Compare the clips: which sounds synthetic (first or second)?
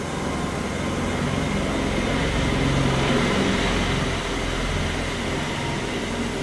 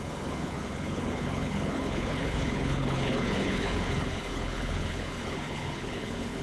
second